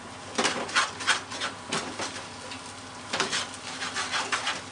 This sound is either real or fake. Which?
real